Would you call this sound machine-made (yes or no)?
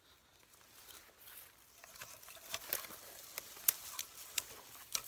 no